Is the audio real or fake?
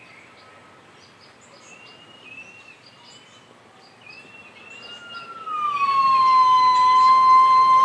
real